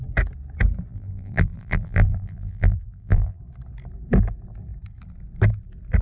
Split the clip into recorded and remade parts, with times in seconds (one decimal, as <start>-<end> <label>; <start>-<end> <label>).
0.0-0.9 recorded; 0.9-3.4 remade; 3.4-6.0 recorded